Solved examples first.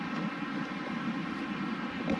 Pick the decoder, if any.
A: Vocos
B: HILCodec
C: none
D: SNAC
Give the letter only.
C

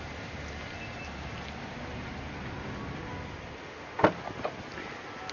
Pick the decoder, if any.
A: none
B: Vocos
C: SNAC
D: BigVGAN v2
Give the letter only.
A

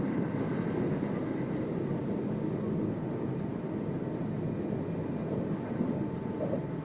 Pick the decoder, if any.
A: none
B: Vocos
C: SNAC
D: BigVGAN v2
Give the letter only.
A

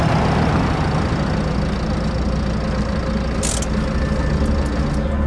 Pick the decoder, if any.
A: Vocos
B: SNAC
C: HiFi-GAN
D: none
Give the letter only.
D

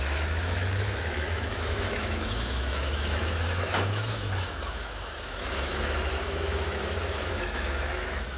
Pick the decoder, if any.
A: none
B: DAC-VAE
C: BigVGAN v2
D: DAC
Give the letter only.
B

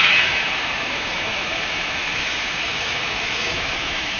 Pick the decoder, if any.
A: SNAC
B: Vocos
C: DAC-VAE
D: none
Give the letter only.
C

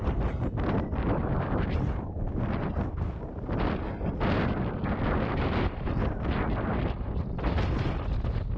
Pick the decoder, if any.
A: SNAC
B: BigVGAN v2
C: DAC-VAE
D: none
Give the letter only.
D